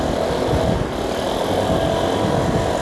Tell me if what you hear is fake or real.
real